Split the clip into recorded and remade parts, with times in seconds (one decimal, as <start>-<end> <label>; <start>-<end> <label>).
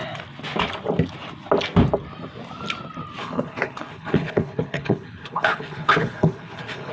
0.0-3.2 recorded; 3.2-6.9 remade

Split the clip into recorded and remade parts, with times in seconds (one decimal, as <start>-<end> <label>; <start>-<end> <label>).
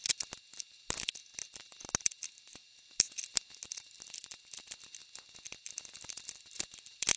0.0-7.2 recorded